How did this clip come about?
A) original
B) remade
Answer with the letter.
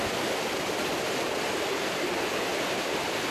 A